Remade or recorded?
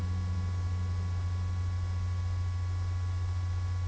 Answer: recorded